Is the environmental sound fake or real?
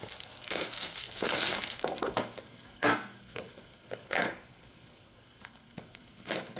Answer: fake